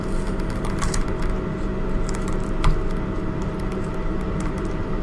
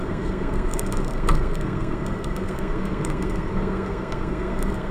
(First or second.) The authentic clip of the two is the first